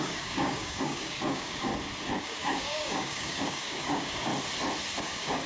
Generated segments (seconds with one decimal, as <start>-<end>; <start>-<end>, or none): 0.0-1.7; 2.2-4.3; 5.0-5.5